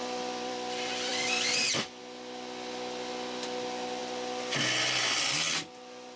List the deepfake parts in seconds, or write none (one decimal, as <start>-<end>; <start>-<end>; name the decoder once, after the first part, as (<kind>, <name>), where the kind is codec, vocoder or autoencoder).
0.0-2.0 (vocoder, BigVGAN v2)